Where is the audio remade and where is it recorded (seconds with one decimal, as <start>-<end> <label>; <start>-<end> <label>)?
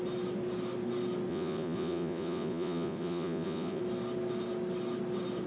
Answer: 0.0-1.3 recorded; 1.3-3.8 remade; 3.8-5.5 recorded